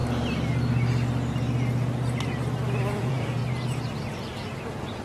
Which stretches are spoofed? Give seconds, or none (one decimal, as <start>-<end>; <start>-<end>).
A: 3.0-3.4; 4.5-5.0